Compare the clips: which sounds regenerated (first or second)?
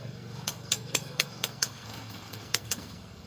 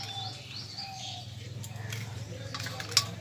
first